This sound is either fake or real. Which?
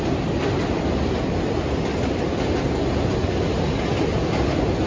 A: real